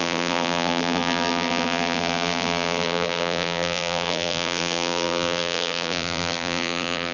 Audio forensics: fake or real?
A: fake